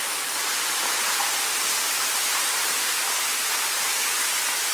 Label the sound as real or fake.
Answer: real